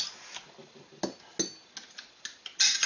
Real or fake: real